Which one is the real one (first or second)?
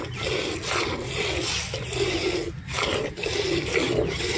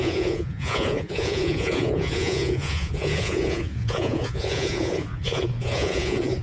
first